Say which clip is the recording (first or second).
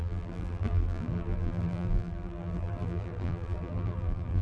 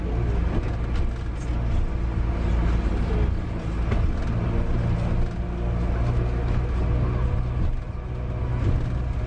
second